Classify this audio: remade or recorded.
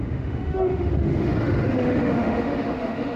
remade